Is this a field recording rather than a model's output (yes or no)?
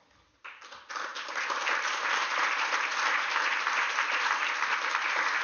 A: yes